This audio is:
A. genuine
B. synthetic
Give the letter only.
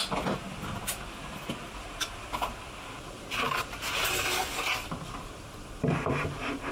B